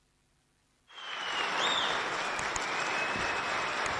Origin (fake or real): real